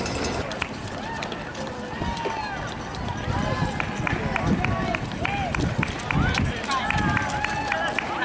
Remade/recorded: recorded